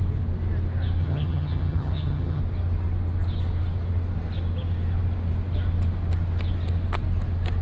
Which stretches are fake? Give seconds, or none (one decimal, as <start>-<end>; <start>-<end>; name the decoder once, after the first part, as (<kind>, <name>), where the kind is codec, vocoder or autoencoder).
1.0-2.4 (vocoder, HiFi-GAN)